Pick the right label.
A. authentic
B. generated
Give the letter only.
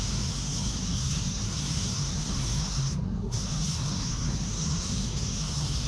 B